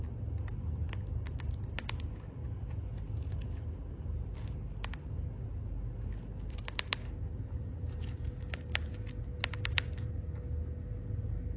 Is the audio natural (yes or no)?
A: yes